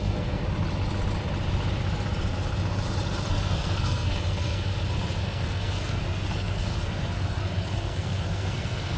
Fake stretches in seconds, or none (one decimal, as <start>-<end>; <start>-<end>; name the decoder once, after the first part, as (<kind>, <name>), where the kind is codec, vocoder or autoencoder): 0.0-0.4 (codec, SNAC); 3.3-4.7; 5.2-9.0

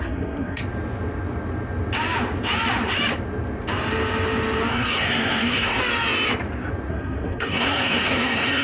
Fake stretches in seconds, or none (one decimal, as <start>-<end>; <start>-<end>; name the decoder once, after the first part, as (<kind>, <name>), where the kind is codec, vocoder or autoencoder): 0.0-0.6 (codec, SNAC); 4.7-5.8; 6.9-8.6

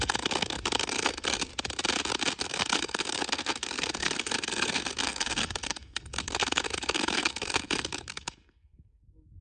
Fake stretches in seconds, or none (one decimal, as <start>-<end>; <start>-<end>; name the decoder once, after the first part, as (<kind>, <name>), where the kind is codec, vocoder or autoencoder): 0.0-1.5 (codec, SNAC); 2.4-9.4

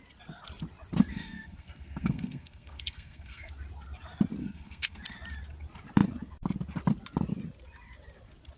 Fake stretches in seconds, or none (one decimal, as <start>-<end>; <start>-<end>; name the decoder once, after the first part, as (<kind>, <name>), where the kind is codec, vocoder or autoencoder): 1.1-3.5 (codec, SNAC); 4.4-5.0

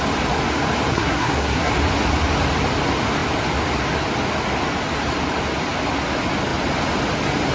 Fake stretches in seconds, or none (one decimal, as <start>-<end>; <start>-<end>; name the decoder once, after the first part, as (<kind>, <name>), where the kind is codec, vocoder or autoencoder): 0.9-1.7 (codec, SNAC)

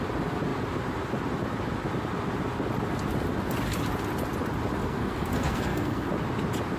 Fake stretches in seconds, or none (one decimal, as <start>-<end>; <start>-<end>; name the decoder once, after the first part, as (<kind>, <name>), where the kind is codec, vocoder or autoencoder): 4.8-6.1 (codec, SNAC)

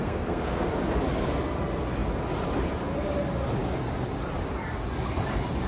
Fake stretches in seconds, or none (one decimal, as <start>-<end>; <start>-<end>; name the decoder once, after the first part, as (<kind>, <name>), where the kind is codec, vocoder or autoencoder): 0.0-0.7 (codec, SNAC)